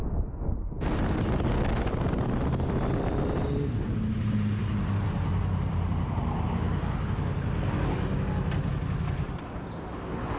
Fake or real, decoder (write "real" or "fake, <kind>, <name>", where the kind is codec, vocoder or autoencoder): real